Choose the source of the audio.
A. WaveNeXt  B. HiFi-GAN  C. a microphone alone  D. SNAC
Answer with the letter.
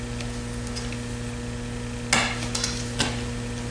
C